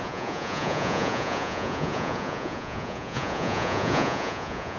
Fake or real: fake